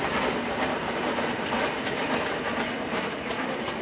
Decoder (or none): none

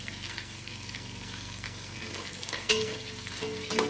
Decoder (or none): codec, SNAC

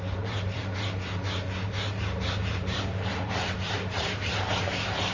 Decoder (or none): vocoder, BigVGAN v2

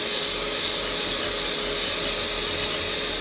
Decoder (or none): none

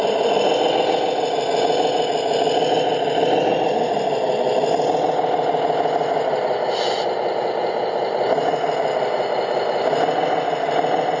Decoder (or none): none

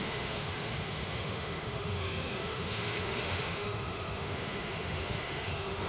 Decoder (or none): autoencoder, DAC-VAE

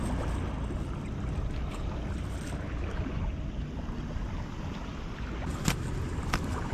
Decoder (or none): none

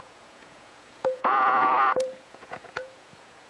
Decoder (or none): vocoder, Vocos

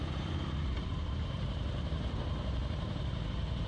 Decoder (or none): vocoder, BigVGAN v2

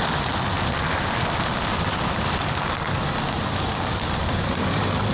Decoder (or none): vocoder, BigVGAN v2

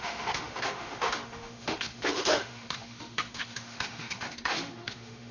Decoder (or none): autoencoder, DAC-VAE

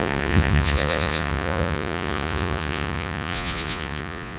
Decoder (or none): vocoder, Vocos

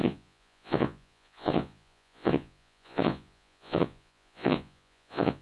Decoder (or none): vocoder, Vocos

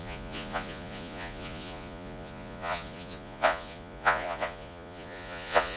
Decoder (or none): vocoder, Vocos